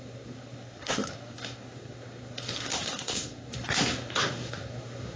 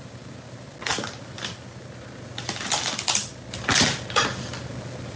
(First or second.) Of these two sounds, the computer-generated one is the first